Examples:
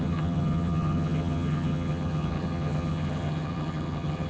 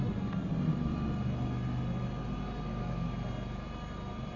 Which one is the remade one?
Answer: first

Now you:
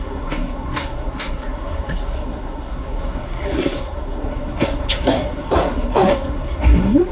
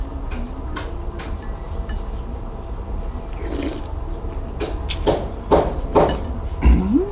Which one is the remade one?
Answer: first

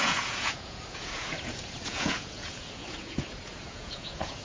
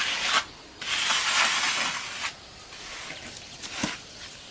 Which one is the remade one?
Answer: first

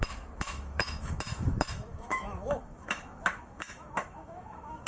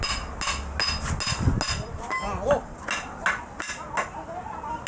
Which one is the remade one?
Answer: first